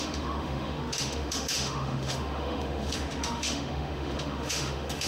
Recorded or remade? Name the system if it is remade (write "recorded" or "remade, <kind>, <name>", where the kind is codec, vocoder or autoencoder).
remade, autoencoder, DAC-VAE